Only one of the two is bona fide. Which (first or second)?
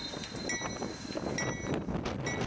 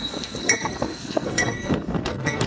first